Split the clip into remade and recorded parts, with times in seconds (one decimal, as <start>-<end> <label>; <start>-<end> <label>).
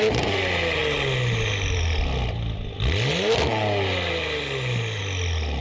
0.0-5.6 recorded